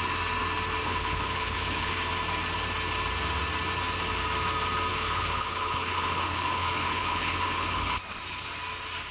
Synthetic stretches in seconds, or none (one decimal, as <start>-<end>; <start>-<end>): 0.8-1.9; 4.9-8.0